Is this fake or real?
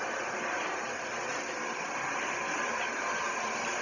real